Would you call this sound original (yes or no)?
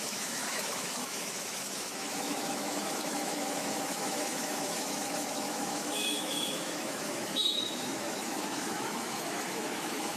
no